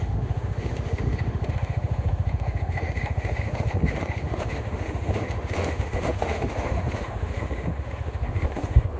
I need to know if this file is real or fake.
fake